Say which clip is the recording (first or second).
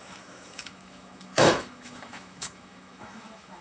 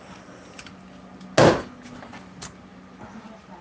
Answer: second